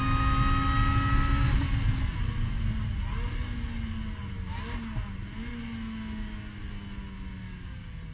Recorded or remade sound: recorded